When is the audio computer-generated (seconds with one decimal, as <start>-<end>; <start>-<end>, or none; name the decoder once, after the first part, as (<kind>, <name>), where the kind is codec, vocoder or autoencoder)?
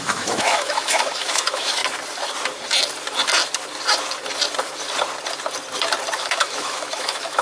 0.0-1.8 (autoencoder, DAC-VAE); 6.2-7.4